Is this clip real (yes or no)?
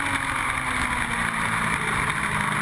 yes